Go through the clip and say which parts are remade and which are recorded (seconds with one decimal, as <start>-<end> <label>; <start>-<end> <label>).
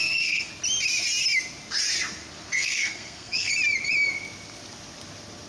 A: 0.0-0.5 remade; 0.5-2.5 recorded; 2.5-3.5 remade; 3.5-5.5 recorded